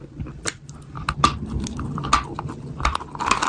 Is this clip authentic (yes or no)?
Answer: yes